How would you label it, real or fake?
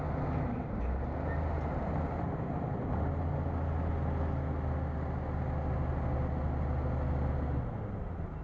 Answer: real